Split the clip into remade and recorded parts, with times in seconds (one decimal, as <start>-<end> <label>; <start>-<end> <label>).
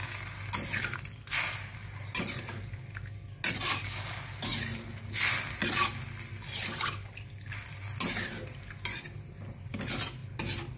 0.0-10.8 recorded